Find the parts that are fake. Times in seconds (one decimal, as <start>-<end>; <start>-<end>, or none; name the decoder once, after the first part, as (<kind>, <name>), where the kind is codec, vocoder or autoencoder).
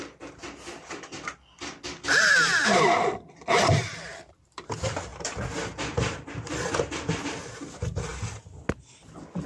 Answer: 0.0-8.1 (vocoder, BigVGAN v2); 8.9-9.5